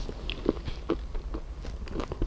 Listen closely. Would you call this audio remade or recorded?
recorded